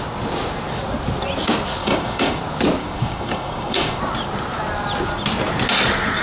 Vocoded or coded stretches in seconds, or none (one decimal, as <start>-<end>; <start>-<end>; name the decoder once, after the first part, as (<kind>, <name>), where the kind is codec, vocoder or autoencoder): 1.8-2.4 (codec, DAC); 2.8-4.0